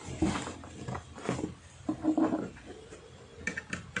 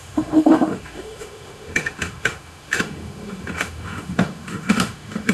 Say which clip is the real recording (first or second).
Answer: first